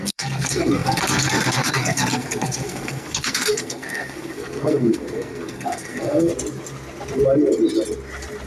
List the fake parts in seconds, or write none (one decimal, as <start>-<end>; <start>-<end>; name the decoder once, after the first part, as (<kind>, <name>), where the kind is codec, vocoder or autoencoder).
0.0-6.3 (codec, SNAC)